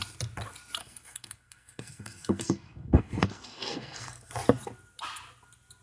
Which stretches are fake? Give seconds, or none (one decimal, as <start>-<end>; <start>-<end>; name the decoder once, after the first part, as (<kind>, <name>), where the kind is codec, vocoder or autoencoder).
0.8-4.3 (codec, SNAC)